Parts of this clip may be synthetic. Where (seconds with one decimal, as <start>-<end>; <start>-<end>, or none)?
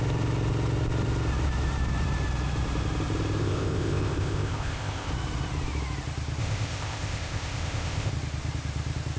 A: 3.4-5.1; 6.4-8.1